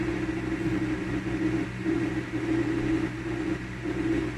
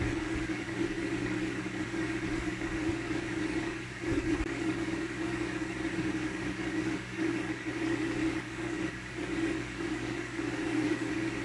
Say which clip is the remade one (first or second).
second